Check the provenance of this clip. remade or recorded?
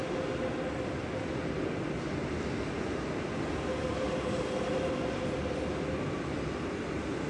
recorded